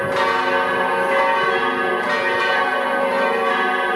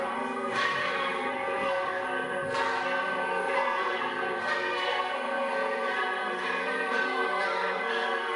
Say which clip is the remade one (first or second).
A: second